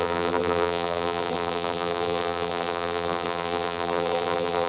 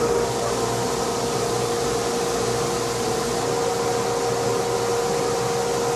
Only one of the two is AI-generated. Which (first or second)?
first